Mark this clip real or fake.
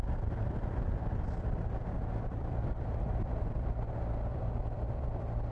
fake